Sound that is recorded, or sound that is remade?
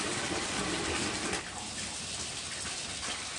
recorded